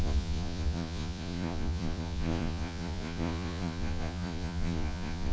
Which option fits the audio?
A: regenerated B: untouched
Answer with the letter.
A